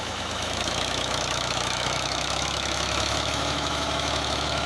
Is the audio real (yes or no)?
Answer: no